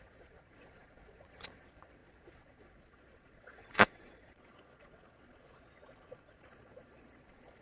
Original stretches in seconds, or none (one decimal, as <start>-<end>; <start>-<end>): none